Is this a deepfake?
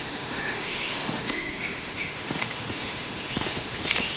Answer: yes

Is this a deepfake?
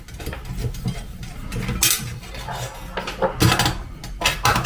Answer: no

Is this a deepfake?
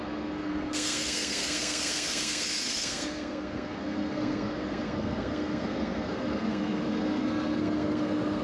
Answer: yes